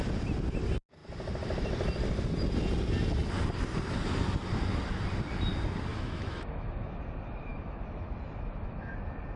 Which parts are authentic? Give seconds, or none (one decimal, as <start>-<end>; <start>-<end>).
0.0-5.9; 7.0-7.5; 8.9-9.4